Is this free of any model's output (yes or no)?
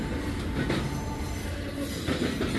yes